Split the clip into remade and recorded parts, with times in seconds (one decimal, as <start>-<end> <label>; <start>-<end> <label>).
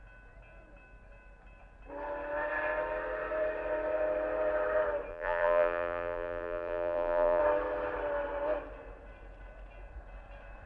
0.0-5.1 recorded; 5.1-7.4 remade; 7.4-10.7 recorded